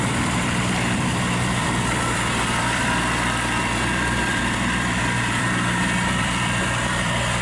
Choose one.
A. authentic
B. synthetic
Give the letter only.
B